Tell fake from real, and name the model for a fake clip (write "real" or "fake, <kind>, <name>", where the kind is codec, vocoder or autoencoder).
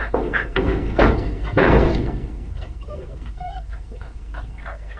fake, codec, SNAC